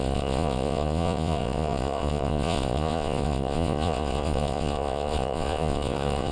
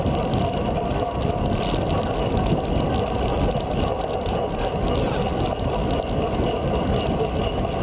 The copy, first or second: first